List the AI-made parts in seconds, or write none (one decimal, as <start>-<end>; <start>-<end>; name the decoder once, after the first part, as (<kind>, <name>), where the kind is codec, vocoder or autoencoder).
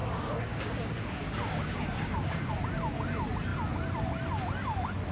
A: 0.0-2.5 (codec, DAC)